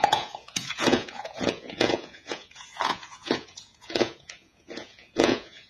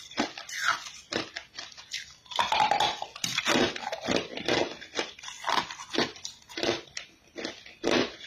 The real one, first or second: second